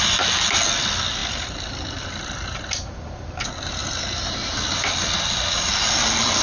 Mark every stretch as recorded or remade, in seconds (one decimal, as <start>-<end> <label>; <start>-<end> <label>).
0.0-6.4 recorded

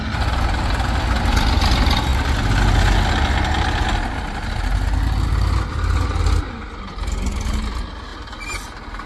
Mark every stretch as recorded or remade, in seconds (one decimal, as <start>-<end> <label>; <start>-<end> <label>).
0.0-9.1 recorded

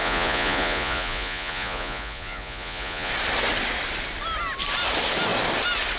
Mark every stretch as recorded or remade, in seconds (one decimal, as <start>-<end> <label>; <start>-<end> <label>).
0.0-3.1 remade; 3.1-6.0 recorded

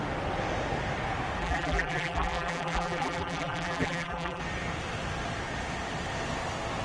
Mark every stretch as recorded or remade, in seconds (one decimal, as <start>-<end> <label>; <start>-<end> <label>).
0.0-1.4 recorded; 1.4-4.4 remade; 4.4-6.8 recorded

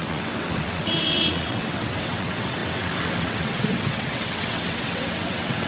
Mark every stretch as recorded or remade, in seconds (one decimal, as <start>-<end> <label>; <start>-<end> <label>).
0.0-5.7 remade

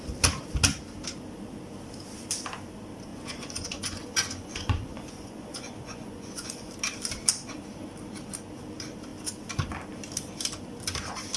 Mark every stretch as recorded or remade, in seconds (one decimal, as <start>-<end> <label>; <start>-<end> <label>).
0.0-3.1 recorded; 3.1-6.7 remade; 6.7-11.4 recorded